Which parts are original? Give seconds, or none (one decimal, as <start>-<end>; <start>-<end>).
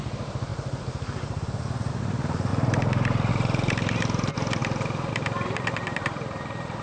2.5-3.3; 4.6-5.1